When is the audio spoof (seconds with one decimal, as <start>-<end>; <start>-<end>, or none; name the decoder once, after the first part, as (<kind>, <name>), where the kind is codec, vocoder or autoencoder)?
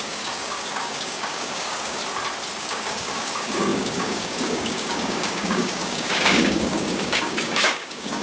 0.0-2.0 (codec, DAC); 2.6-8.2